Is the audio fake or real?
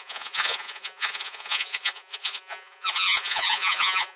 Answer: fake